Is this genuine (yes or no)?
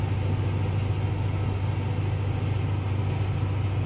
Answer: yes